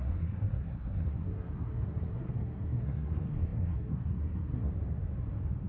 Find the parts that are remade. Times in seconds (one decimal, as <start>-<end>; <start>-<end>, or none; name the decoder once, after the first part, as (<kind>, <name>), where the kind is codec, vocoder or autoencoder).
0.0-4.7 (codec, SNAC)